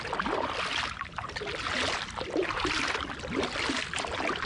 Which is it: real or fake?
real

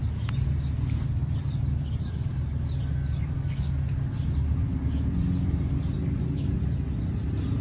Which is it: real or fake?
real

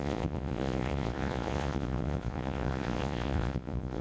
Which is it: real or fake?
fake